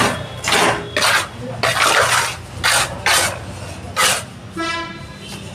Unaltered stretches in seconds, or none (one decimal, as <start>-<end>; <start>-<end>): 0.0-5.5